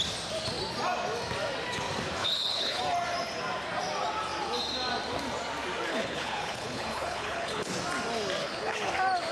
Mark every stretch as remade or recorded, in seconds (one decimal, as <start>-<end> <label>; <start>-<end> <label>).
0.0-2.2 recorded; 2.2-2.8 remade; 2.8-5.9 recorded; 5.9-7.7 remade; 7.7-8.4 recorded; 8.4-8.9 remade; 8.9-9.3 recorded